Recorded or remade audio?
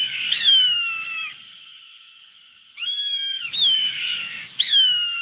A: remade